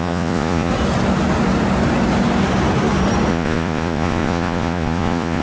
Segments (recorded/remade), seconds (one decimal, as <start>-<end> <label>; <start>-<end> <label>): 0.0-0.7 remade; 0.7-3.3 recorded; 3.3-5.4 remade